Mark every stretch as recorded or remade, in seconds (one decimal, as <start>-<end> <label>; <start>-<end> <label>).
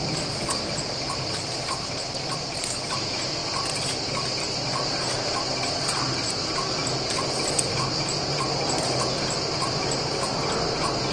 0.0-11.1 recorded